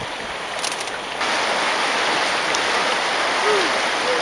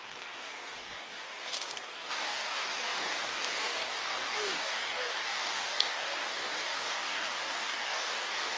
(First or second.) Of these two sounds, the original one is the first